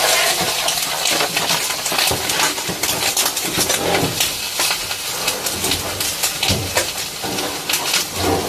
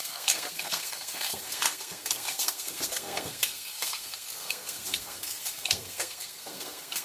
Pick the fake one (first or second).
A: second